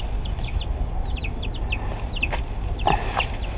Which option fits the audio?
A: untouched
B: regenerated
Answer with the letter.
A